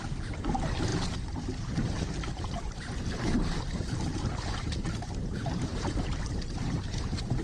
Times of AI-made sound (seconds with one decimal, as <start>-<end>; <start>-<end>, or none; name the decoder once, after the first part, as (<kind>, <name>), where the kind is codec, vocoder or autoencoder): 0.0-0.9 (vocoder, BigVGAN v2); 1.8-7.4

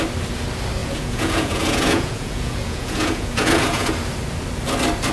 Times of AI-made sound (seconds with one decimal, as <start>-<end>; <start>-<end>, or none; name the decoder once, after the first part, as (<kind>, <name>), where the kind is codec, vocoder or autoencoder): 0.8-3.9 (vocoder, Vocos)

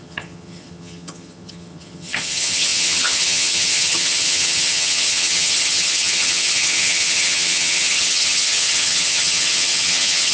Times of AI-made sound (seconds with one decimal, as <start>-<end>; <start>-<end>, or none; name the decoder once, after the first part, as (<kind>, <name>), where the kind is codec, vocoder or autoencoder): 0.0-10.3 (vocoder, HiFi-GAN)

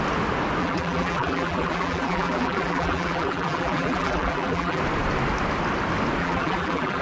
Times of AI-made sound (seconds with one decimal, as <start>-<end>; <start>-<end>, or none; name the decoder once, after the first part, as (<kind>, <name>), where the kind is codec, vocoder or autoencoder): 0.6-4.8 (vocoder, BigVGAN v2); 6.2-7.0